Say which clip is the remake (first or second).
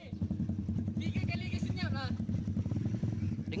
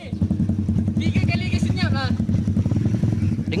first